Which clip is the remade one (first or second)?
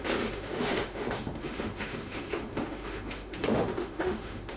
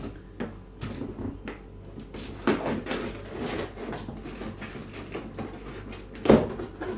first